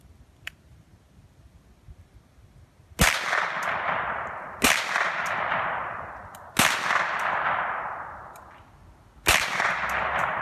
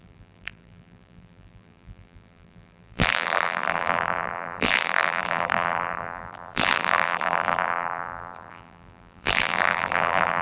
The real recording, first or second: first